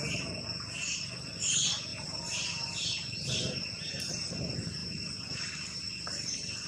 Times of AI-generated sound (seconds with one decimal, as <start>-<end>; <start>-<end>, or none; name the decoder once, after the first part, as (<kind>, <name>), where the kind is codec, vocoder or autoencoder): 1.9-4.3 (vocoder, BigVGAN v2); 4.8-5.9